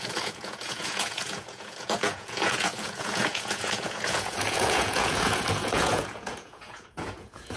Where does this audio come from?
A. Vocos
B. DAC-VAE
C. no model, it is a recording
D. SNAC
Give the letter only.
A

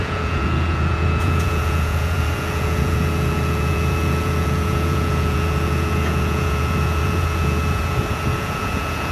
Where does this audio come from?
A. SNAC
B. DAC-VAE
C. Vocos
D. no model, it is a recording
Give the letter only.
C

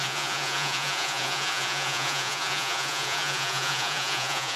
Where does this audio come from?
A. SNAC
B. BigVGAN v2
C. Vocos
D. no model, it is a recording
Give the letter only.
C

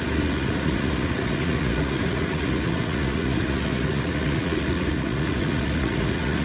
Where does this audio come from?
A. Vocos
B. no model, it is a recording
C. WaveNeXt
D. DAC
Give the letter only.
A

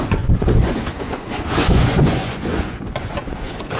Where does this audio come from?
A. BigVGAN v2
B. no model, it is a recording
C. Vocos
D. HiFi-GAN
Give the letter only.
C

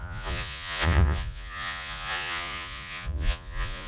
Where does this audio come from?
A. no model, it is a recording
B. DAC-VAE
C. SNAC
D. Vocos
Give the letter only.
D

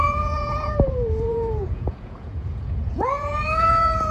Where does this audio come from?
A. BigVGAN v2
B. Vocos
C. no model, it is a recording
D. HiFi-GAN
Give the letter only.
B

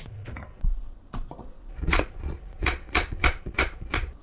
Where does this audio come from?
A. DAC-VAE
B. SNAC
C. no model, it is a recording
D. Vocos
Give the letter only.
D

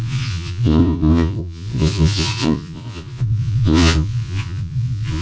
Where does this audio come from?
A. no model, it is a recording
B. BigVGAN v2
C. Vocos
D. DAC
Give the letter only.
C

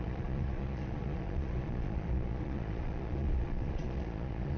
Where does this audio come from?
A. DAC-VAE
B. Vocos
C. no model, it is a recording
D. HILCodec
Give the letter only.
B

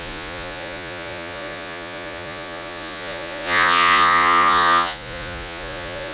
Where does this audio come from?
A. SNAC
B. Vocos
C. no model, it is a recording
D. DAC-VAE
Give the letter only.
B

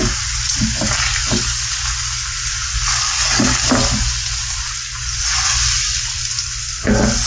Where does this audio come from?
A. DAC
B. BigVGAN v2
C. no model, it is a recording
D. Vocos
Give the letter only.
C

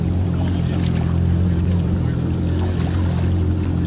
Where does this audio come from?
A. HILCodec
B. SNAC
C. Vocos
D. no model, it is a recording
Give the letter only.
D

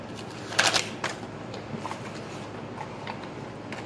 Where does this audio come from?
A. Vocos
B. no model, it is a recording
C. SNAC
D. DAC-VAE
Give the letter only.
B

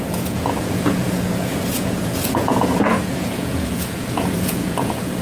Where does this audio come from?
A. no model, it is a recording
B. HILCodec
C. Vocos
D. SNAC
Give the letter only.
C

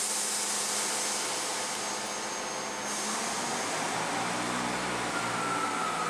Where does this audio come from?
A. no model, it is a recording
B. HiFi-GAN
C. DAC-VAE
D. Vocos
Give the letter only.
A